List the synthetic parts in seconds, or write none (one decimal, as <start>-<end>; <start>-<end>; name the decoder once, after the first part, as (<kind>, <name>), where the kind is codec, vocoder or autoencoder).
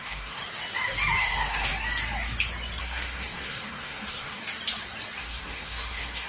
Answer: 0.0-0.4 (codec, SNAC); 1.2-1.7; 2.8-4.4; 5.2-6.3